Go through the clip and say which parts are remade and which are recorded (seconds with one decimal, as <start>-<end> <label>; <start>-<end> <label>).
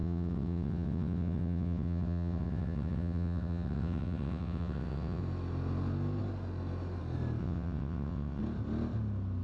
0.0-5.2 remade; 5.2-7.4 recorded; 7.4-8.4 remade; 8.4-9.4 recorded